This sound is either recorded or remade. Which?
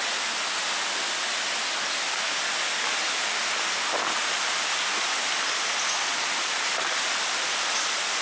recorded